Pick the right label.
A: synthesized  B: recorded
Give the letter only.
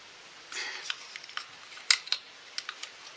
B